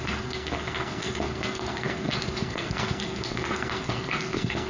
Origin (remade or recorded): remade